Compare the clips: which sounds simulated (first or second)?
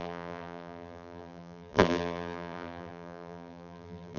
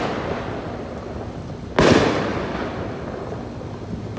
first